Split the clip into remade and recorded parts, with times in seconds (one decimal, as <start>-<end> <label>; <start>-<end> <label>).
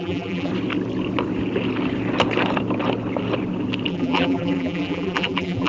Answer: 0.0-0.5 remade; 0.5-3.9 recorded; 3.9-5.7 remade